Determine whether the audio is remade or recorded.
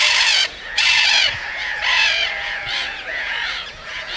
remade